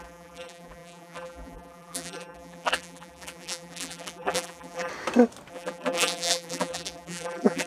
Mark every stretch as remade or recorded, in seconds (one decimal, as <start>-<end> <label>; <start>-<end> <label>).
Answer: 0.0-4.9 remade; 4.9-5.5 recorded; 5.5-7.7 remade

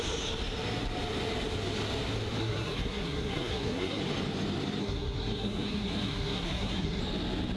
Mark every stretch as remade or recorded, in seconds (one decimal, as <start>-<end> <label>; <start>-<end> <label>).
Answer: 0.0-2.4 recorded; 2.4-4.0 remade; 4.0-4.8 recorded; 4.8-7.0 remade; 7.0-7.6 recorded

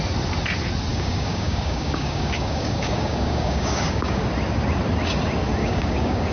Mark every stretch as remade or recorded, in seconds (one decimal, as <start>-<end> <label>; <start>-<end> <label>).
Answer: 0.0-0.9 recorded; 0.9-4.2 remade; 4.2-5.6 recorded; 5.6-6.3 remade

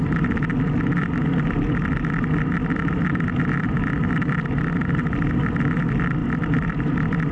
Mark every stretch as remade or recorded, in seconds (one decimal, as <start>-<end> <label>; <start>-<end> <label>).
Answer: 0.0-6.2 recorded; 6.2-7.3 remade

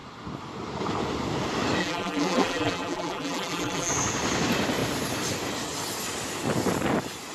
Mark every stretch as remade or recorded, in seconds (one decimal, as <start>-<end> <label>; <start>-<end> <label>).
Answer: 0.0-1.8 recorded; 1.8-3.9 remade; 3.9-7.3 recorded

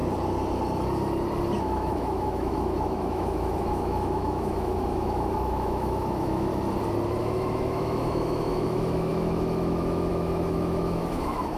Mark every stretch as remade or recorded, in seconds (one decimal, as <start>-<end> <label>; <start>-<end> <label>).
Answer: 0.0-1.6 recorded; 1.6-6.5 remade; 6.5-7.2 recorded; 7.2-11.6 remade

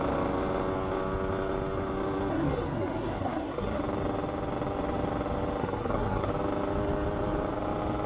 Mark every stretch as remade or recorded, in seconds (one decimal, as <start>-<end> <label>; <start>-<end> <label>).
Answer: 0.0-2.3 recorded; 2.3-3.8 remade; 3.8-5.6 recorded; 5.6-6.3 remade; 6.3-8.1 recorded

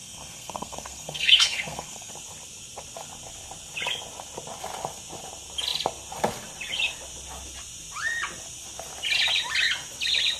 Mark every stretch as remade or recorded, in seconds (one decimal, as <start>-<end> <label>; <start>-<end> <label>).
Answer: 0.0-2.1 remade; 2.1-10.4 recorded